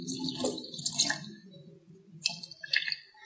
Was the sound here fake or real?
real